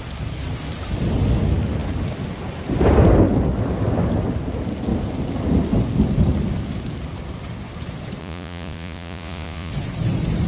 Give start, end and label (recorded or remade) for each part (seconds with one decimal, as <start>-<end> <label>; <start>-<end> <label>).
0.0-8.2 recorded; 8.2-9.7 remade; 9.7-10.5 recorded